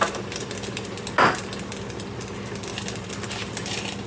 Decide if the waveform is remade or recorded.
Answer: recorded